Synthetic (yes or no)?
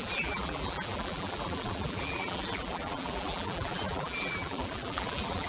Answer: yes